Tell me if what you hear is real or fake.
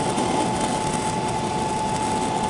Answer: real